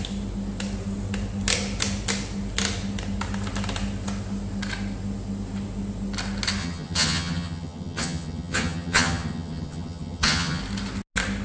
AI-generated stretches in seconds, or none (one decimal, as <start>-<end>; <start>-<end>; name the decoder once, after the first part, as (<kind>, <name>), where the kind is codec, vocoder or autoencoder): 6.6-10.6 (vocoder, HiFi-GAN)